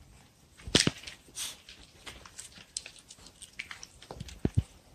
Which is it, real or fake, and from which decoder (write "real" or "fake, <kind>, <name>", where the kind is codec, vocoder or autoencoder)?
real